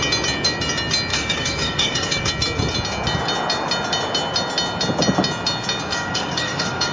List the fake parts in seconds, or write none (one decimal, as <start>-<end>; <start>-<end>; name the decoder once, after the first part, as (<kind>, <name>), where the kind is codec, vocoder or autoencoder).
1.1-2.3 (codec, DAC); 5.9-6.9